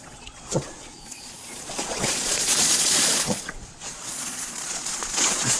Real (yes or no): no